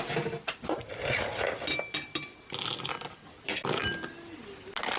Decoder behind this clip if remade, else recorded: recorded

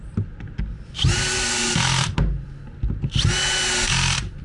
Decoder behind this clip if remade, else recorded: recorded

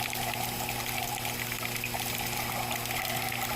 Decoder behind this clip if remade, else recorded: recorded